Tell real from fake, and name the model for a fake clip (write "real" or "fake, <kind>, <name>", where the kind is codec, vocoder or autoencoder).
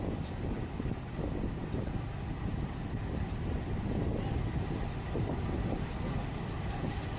real